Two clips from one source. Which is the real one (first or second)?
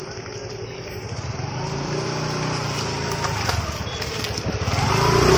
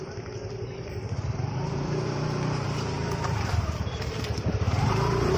first